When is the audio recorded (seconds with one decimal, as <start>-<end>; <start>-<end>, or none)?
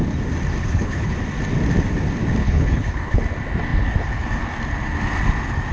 0.0-0.6; 1.1-2.4; 3.2-5.7